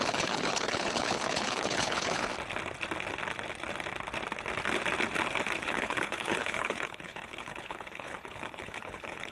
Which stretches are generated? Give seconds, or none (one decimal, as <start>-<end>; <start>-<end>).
0.0-2.3; 5.6-9.3